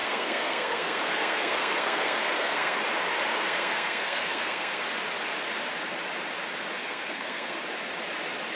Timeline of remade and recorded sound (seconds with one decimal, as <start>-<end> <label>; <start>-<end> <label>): 0.0-2.8 remade; 2.8-3.3 recorded; 3.3-4.8 remade; 4.8-6.8 recorded; 6.8-7.6 remade; 7.6-8.6 recorded